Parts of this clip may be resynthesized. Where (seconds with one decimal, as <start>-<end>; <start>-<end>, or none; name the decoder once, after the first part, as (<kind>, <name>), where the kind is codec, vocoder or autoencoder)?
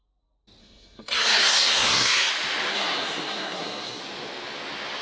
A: 0.6-2.3 (codec, SNAC); 2.7-4.0